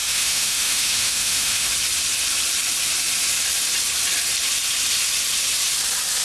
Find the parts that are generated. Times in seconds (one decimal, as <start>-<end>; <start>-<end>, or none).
0.0-1.7